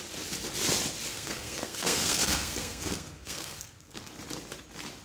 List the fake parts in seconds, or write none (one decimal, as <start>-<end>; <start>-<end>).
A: 1.1-4.1